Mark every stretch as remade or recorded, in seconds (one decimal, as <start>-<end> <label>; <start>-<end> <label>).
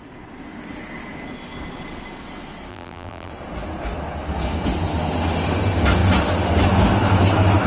0.0-2.7 recorded; 2.7-3.3 remade; 3.3-7.7 recorded